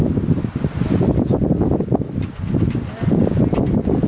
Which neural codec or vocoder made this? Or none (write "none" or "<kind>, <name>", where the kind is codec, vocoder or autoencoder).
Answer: none